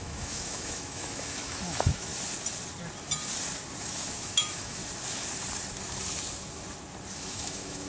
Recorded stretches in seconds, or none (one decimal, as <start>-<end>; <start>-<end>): 2.1-3.8; 4.8-7.1